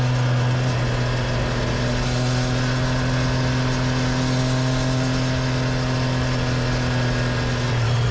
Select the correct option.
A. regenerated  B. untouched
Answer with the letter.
B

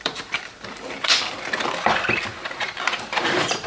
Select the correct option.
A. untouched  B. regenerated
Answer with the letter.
B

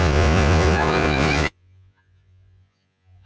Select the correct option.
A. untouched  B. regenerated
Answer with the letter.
B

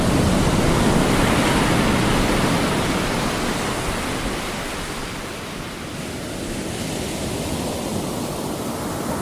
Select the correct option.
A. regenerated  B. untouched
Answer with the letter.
B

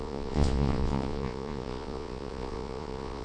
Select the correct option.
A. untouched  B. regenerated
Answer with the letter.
B